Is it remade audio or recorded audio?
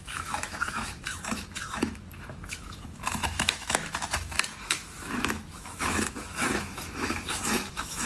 remade